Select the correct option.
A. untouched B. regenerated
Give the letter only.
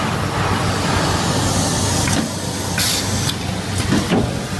A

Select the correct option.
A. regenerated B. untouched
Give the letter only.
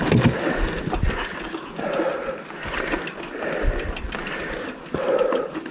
B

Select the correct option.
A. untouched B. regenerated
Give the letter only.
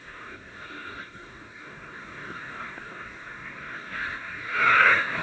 B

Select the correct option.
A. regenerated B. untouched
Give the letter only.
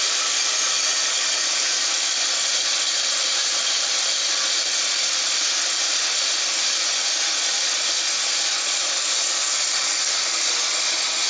B